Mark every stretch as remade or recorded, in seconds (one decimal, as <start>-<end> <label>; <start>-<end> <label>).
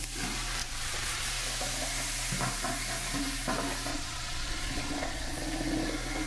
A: 0.0-0.6 recorded; 0.6-1.3 remade; 1.3-3.9 recorded; 3.9-5.4 remade; 5.4-6.3 recorded